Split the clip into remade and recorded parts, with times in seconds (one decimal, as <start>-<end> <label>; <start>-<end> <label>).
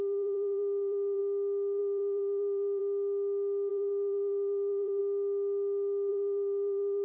0.0-1.2 remade; 1.2-1.8 recorded; 1.8-2.8 remade; 2.8-3.7 recorded; 3.7-5.0 remade; 5.0-6.1 recorded; 6.1-7.0 remade